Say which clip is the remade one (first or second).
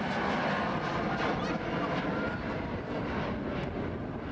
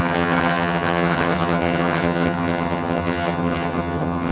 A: second